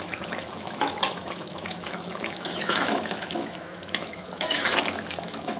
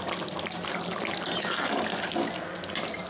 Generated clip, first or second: first